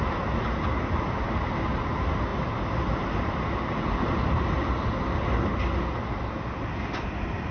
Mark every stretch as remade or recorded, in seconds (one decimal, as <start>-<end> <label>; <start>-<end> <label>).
0.0-7.5 recorded